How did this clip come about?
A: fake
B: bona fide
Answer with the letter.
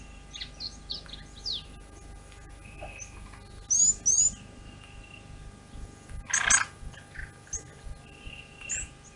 B